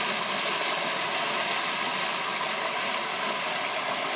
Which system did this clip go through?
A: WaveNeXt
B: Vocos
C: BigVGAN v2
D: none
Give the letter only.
D